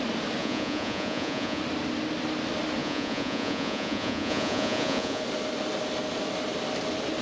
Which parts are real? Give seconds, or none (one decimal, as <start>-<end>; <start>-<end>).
0.0-0.4; 1.6-2.8; 5.2-7.2